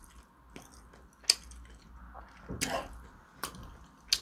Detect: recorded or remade recorded